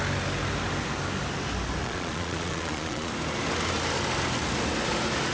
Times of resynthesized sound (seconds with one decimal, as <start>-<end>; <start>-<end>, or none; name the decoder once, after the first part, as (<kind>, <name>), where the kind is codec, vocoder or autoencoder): 1.8-3.1 (vocoder, Vocos)